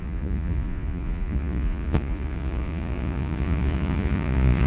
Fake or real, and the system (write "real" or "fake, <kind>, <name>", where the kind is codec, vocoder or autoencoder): fake, vocoder, Vocos